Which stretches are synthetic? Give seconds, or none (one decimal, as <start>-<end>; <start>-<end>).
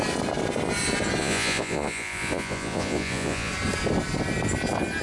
1.2-3.5